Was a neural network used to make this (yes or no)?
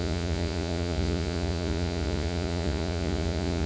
yes